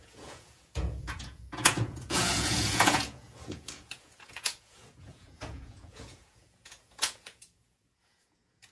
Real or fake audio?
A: fake